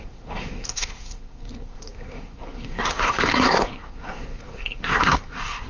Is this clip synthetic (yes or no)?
yes